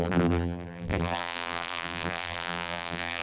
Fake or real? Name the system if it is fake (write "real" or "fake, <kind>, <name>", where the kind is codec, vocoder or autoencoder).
fake, vocoder, BigVGAN v2